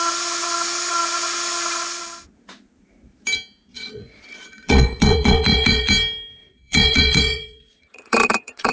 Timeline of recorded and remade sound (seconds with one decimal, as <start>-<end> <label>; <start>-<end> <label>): 0.0-3.7 recorded; 3.7-5.9 remade; 5.9-6.4 recorded; 6.4-8.7 remade

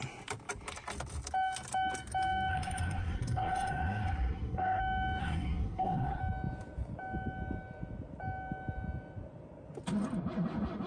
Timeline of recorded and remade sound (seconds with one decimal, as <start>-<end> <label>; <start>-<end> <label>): 0.0-2.5 recorded; 2.5-4.8 remade; 4.8-5.2 recorded; 5.2-6.2 remade; 6.2-10.9 recorded

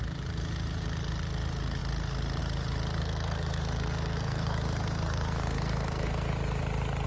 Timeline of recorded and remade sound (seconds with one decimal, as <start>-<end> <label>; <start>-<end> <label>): 0.0-3.0 recorded; 3.0-6.3 remade; 6.3-7.1 recorded

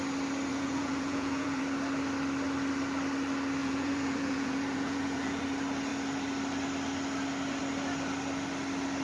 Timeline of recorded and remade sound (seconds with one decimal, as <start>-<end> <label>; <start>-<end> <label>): 0.0-0.5 recorded; 0.5-1.6 remade; 1.6-3.6 recorded; 3.6-5.4 remade; 5.4-9.0 recorded

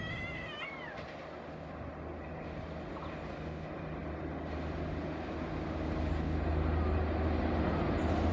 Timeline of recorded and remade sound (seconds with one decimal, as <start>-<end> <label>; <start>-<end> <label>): 0.0-8.3 recorded

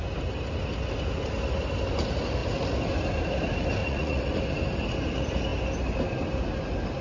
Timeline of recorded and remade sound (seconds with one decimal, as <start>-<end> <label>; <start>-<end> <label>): 0.0-3.8 recorded; 3.8-4.4 remade; 4.4-7.0 recorded

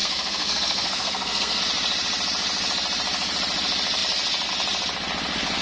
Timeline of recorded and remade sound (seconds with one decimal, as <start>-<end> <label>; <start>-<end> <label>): 0.0-1.6 remade; 1.6-5.6 recorded